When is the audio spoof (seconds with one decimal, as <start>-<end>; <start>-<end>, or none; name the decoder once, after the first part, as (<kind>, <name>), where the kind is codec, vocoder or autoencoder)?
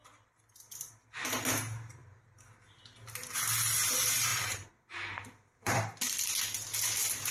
4.3-5.8 (vocoder, BigVGAN v2)